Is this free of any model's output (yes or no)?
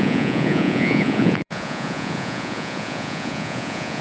no